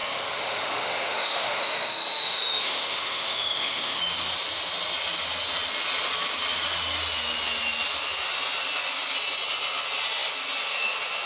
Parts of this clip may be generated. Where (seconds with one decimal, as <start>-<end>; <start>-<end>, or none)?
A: 0.0-4.0